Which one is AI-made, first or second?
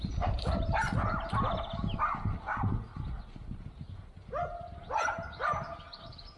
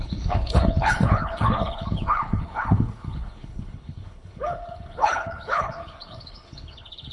second